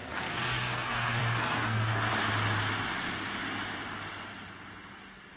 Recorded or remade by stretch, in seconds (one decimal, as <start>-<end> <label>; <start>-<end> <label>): 0.0-2.1 remade; 2.1-5.4 recorded